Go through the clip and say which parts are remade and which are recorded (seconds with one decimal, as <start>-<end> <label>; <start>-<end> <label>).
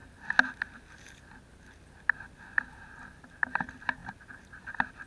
0.0-5.1 recorded